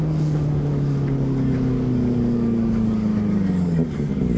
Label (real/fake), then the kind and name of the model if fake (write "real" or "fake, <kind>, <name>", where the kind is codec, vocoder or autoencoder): fake, codec, DAC